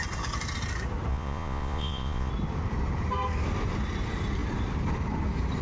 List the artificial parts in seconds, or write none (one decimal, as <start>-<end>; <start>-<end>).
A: 1.1-2.3